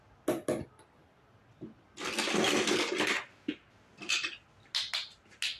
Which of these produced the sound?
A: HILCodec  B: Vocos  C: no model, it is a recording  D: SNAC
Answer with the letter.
C